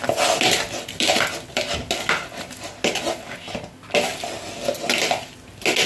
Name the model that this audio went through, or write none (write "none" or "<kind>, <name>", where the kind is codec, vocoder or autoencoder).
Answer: none